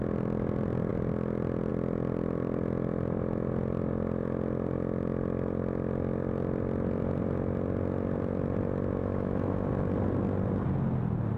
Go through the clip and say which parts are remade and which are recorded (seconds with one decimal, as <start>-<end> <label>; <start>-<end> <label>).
0.0-9.0 recorded; 9.0-9.7 remade; 9.7-11.4 recorded